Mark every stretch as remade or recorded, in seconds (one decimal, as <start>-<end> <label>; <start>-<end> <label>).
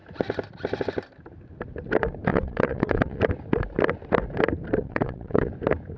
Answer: 0.0-2.3 recorded; 2.3-3.2 remade; 3.2-4.8 recorded; 4.8-5.5 remade; 5.5-6.0 recorded